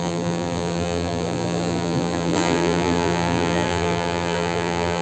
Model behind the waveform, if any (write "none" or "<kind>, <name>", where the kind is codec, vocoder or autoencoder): vocoder, BigVGAN v2